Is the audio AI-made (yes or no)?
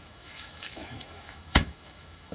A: yes